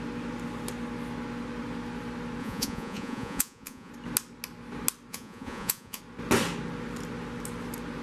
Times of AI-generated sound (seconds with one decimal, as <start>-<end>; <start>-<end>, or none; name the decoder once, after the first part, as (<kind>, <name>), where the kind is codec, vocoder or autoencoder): 2.4-3.9 (vocoder, Vocos); 5.1-6.0